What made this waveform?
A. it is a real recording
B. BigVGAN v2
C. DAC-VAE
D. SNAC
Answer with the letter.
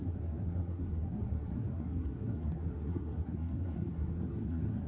D